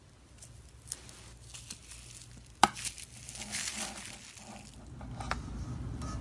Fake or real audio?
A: real